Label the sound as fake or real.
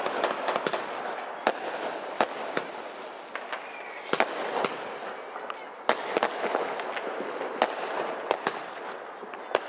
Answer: real